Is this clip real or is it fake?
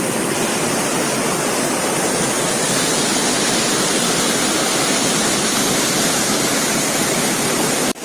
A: real